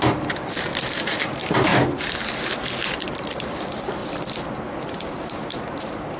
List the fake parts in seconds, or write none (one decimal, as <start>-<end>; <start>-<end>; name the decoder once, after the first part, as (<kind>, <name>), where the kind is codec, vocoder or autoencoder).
0.0-0.7 (vocoder, BigVGAN v2); 1.2-1.7; 3.1-4.0; 4.7-6.2